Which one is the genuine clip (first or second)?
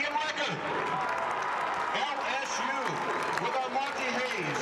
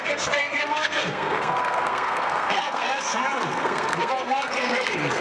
first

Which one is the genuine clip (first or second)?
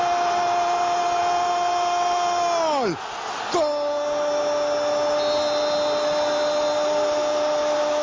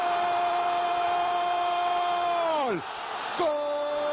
first